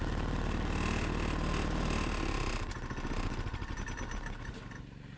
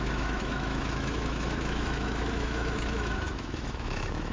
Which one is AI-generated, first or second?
second